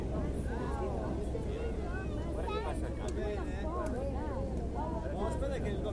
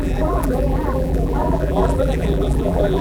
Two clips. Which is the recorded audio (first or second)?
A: first